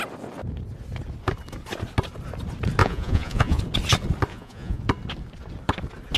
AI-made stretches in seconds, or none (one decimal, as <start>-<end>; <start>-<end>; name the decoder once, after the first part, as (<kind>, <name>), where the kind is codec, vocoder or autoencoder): 2.8-3.6 (vocoder, Vocos); 4.3-4.8